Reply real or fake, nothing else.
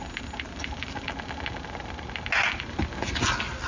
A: real